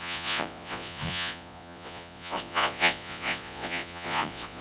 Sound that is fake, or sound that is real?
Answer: fake